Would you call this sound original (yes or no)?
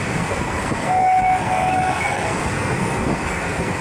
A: no